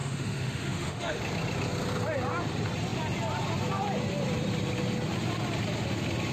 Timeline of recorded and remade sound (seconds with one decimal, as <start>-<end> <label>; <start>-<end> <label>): 0.0-1.2 remade; 1.2-6.3 recorded